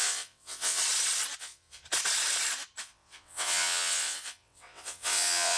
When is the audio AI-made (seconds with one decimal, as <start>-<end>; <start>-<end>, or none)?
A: 0.0-0.8; 1.4-1.8; 2.8-5.6